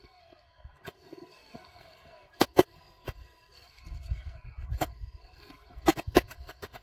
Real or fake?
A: fake